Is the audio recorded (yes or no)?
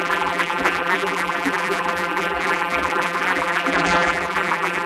no